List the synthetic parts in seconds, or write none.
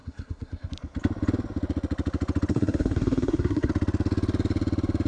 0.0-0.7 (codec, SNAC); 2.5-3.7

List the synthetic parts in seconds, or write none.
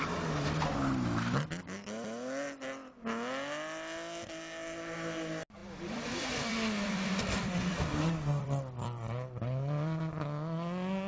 5.6-10.0 (vocoder, BigVGAN v2)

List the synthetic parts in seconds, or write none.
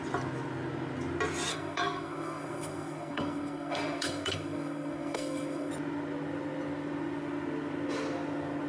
1.5-5.7 (codec, SNAC)